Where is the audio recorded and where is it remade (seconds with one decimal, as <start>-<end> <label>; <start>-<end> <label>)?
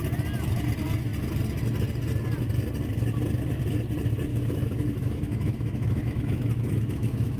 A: 0.0-4.3 recorded; 4.3-7.4 remade